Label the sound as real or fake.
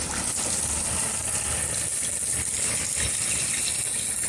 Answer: real